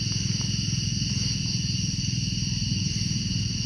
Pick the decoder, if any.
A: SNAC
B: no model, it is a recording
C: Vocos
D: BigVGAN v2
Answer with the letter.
B